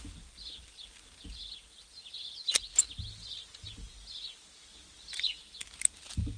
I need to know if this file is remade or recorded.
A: recorded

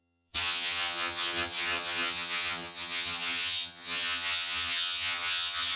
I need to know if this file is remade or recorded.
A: remade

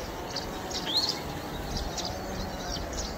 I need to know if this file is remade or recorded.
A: recorded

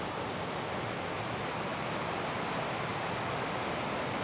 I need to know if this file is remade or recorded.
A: recorded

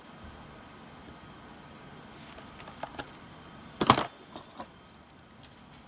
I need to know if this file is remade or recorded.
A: remade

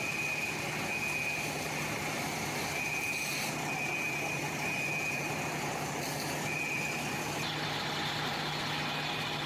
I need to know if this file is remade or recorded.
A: recorded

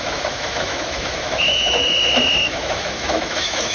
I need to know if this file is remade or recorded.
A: remade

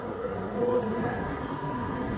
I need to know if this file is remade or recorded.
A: remade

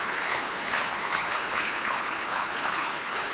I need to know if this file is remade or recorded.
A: remade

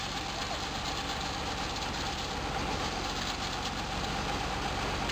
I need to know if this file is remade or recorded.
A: recorded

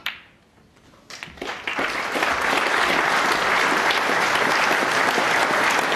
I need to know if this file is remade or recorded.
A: recorded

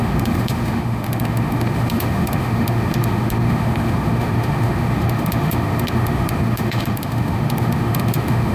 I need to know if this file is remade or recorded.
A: remade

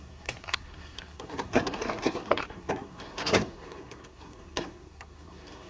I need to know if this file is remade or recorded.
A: remade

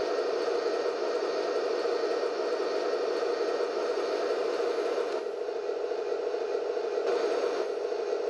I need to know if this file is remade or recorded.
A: recorded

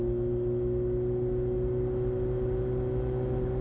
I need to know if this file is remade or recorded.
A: recorded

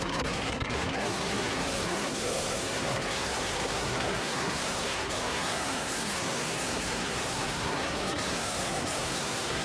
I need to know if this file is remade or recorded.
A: remade